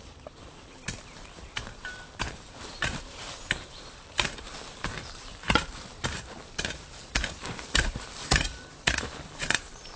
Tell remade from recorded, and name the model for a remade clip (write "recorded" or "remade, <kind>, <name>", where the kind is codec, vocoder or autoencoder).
remade, vocoder, BigVGAN v2